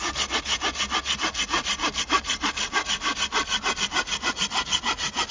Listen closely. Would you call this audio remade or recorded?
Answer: recorded